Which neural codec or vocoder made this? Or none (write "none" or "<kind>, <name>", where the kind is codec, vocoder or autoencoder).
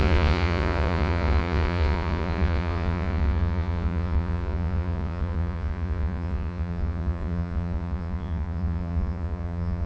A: vocoder, Vocos